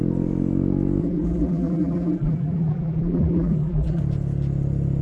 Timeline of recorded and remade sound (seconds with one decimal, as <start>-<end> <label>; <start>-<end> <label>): 0.0-1.0 recorded; 1.0-4.0 remade; 4.0-5.0 recorded